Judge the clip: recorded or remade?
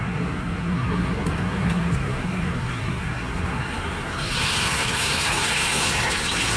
remade